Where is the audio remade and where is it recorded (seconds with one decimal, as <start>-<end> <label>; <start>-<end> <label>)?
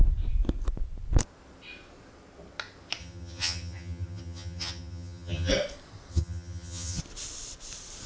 0.0-3.0 recorded; 3.0-5.5 remade; 5.5-6.1 recorded; 6.1-7.0 remade; 7.0-8.1 recorded